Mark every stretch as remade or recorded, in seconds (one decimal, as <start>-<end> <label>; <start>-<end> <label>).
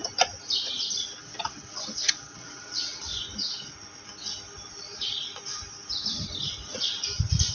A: 0.0-1.2 recorded; 1.2-3.0 remade; 3.0-7.5 recorded